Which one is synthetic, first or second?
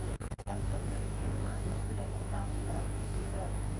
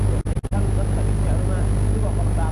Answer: first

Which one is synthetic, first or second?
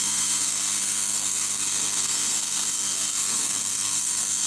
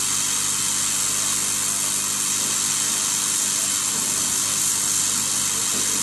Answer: first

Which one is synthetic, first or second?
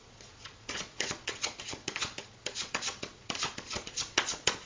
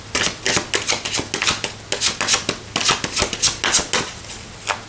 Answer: first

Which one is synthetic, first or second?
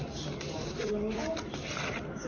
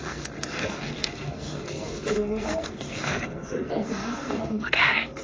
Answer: second